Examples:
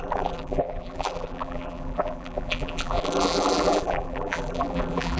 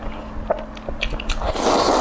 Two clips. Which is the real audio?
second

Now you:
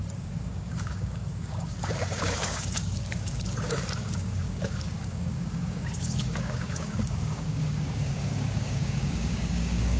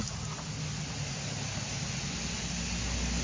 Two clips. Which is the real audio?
second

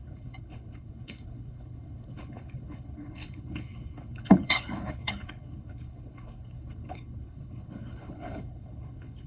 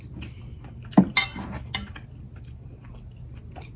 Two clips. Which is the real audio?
second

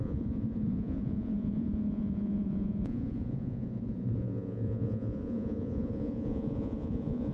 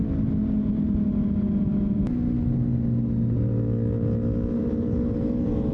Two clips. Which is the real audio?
second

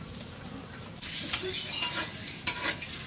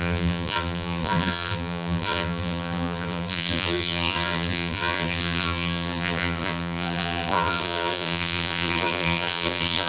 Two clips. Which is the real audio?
first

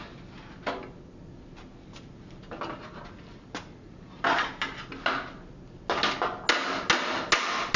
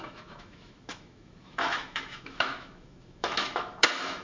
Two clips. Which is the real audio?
first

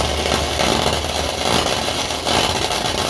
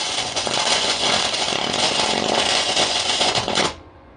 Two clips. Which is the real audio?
first